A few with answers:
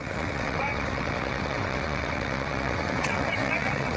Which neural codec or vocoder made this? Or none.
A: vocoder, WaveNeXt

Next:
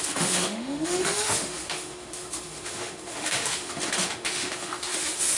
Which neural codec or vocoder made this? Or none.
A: autoencoder, DAC-VAE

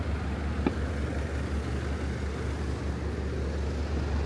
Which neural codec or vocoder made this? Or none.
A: none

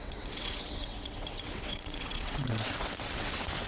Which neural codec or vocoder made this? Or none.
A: vocoder, WaveNeXt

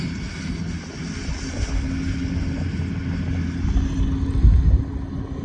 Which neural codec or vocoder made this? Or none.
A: none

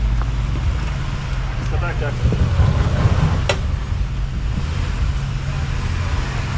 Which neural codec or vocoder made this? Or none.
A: none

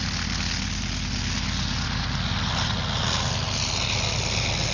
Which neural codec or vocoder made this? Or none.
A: none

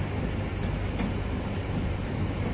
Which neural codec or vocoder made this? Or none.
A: none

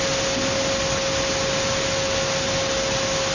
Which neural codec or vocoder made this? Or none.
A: none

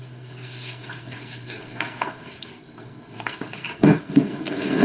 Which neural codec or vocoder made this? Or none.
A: codec, SNAC